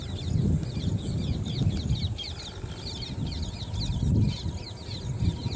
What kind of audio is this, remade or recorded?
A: recorded